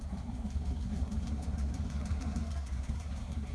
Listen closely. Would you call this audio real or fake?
fake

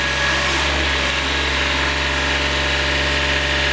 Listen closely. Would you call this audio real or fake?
real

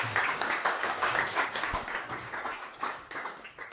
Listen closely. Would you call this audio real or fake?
fake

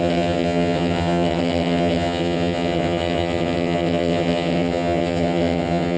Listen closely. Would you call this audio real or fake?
fake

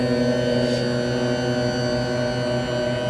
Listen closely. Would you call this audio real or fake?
real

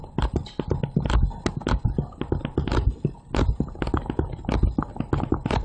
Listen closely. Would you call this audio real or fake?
real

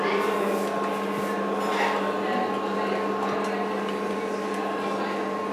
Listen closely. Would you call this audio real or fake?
real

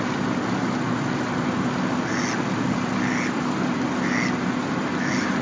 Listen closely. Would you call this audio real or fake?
real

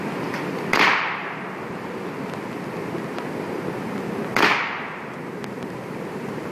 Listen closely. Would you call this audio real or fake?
real